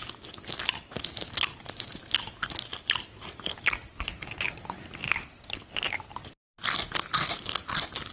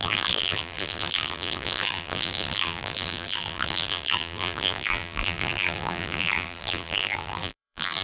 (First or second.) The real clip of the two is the first